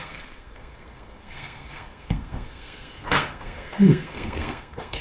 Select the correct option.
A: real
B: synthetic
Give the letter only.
B